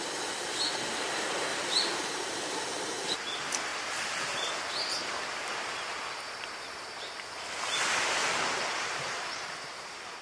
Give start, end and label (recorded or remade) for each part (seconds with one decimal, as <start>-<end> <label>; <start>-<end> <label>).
0.0-1.5 recorded; 1.5-3.1 remade; 3.1-8.2 recorded; 8.2-10.2 remade